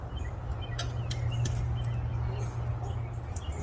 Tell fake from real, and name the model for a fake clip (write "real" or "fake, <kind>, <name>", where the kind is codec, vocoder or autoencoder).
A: real